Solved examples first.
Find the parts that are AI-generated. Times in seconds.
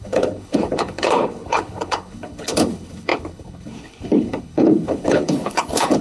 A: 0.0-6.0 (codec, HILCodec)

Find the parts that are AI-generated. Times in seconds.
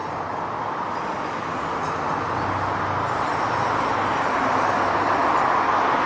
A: none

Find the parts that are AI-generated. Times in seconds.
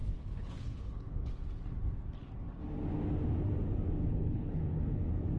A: 0.0-1.3 (codec, HILCodec); 4.1-5.0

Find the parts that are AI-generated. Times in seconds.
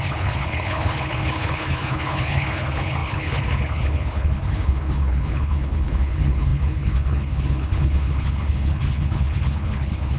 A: 0.0-10.2 (codec, HILCodec)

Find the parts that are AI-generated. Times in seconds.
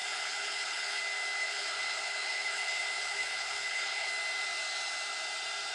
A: 0.0-1.0 (codec, HILCodec); 1.4-4.1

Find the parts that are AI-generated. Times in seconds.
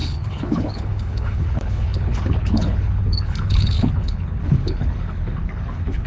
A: 0.0-6.1 (codec, HILCodec)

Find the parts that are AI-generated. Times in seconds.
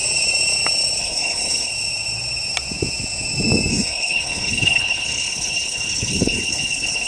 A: 1.0-1.7 (codec, HILCodec); 3.7-7.1